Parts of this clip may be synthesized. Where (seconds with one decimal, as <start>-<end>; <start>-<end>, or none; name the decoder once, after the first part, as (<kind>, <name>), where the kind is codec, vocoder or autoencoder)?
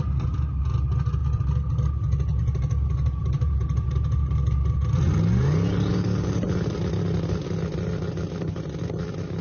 none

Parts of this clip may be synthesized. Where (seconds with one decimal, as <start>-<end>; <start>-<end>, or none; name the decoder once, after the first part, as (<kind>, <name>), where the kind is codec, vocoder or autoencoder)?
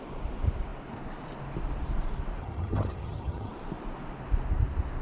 2.4-3.5 (vocoder, HiFi-GAN)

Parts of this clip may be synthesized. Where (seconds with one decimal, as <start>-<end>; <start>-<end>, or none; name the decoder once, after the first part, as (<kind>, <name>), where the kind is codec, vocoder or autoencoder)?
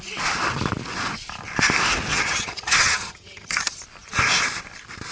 2.1-3.5 (vocoder, HiFi-GAN)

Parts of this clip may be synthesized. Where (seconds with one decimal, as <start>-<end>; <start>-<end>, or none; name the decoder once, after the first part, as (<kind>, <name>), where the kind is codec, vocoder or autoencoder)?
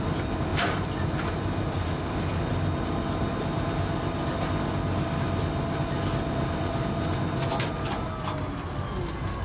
none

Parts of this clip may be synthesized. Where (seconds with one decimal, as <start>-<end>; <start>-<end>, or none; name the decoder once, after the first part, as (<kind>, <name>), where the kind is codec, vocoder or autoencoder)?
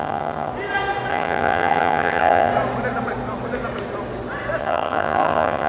0.0-0.5 (vocoder, HiFi-GAN); 1.1-2.5; 4.6-5.7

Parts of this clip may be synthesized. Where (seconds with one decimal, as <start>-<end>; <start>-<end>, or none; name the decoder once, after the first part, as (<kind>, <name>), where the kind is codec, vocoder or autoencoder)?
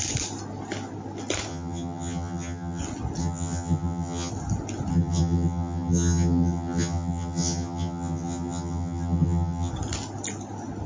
1.5-2.8 (vocoder, HiFi-GAN); 3.2-4.3; 4.9-9.7